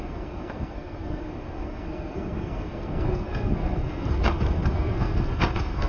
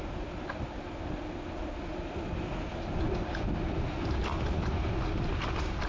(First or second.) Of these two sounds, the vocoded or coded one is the first